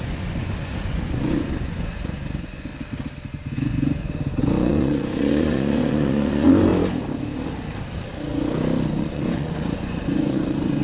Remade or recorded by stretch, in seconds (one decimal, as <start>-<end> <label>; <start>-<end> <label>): 0.0-2.7 remade; 2.7-3.3 recorded; 3.3-6.7 remade; 6.7-8.9 recorded; 8.9-10.8 remade